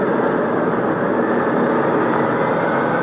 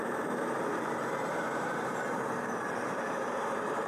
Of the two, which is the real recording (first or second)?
first